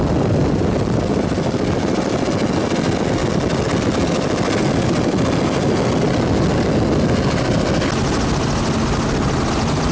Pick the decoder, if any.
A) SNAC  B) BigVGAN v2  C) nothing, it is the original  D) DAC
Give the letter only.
C